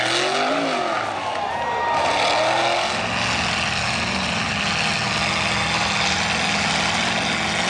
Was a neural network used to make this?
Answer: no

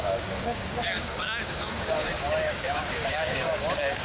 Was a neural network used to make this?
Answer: yes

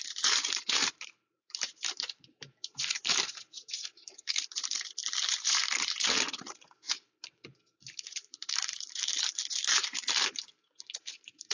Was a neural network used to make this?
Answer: yes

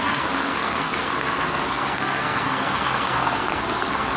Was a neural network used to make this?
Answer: yes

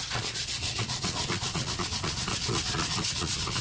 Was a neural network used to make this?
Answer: yes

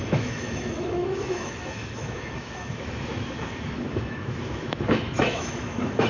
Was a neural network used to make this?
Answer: yes